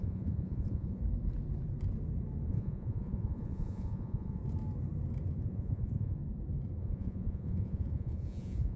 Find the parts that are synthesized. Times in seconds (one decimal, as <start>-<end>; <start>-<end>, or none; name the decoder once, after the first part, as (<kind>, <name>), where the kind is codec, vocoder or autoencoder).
0.0-1.0 (vocoder, Vocos); 2.5-4.4; 5.5-6.2; 6.8-8.8